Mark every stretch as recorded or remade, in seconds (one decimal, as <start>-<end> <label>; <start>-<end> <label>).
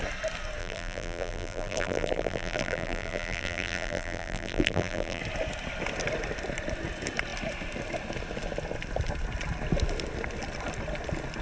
0.0-0.6 recorded; 0.6-5.2 remade; 5.2-11.4 recorded